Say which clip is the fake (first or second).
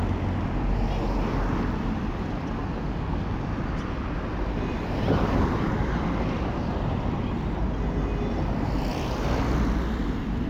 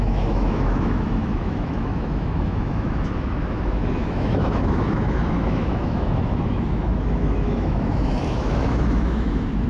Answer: second